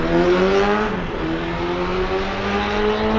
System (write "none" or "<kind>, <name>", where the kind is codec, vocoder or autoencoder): none